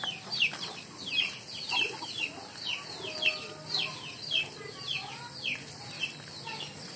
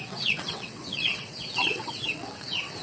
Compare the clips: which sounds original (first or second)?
first